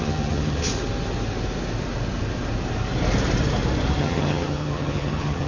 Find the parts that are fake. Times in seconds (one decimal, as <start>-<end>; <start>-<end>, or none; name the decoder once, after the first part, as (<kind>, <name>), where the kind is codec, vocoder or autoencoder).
0.0-0.7 (vocoder, HiFi-GAN); 4.0-5.5